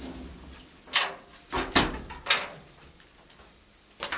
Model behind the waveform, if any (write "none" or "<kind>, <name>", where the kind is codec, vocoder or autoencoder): none